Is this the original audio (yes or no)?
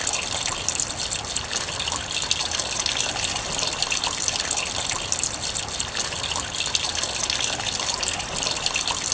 yes